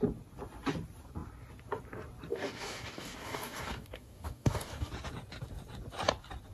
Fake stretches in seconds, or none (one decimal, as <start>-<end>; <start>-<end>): 2.3-4.9